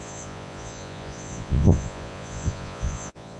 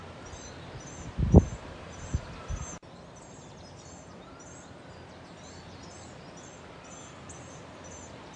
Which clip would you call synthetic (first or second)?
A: first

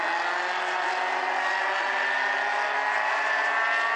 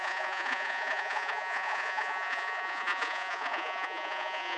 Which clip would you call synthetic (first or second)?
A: second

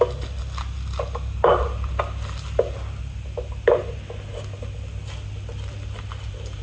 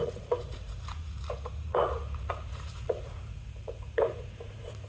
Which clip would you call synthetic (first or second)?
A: second